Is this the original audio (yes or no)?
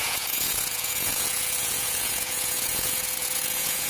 no